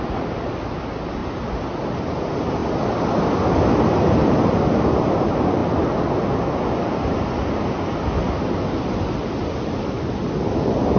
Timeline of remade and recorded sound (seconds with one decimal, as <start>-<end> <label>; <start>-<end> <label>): 0.0-11.0 recorded